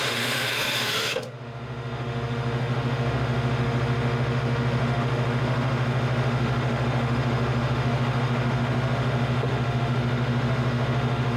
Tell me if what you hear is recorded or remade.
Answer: remade